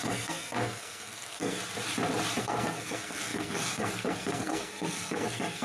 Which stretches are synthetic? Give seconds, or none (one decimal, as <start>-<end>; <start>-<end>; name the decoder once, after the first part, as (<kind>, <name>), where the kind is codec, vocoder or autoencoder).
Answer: 0.0-1.6 (codec, SNAC); 2.4-5.6